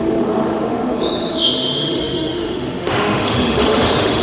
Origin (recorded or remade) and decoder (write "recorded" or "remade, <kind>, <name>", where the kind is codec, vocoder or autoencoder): remade, autoencoder, DAC-VAE